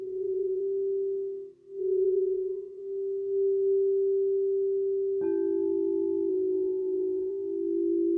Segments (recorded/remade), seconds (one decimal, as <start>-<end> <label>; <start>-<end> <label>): 0.0-0.6 remade; 0.6-1.8 recorded; 1.8-2.8 remade; 2.8-6.3 recorded; 6.3-7.3 remade; 7.3-8.2 recorded